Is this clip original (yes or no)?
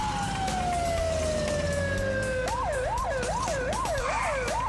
yes